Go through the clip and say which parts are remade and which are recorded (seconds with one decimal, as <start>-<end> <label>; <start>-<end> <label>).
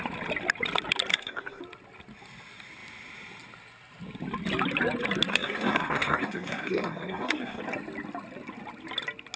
0.0-1.1 recorded; 1.1-1.6 remade; 1.6-5.3 recorded; 5.3-7.6 remade; 7.6-9.4 recorded